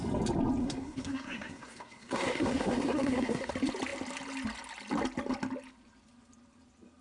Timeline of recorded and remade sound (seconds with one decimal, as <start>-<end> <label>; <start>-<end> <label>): 0.0-0.6 recorded; 0.6-3.5 remade; 3.5-7.0 recorded